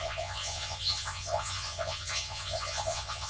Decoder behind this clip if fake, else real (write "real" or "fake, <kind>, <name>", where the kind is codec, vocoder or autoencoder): fake, vocoder, Vocos